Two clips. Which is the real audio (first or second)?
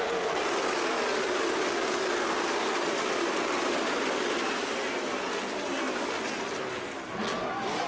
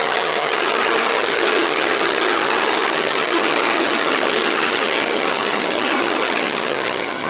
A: first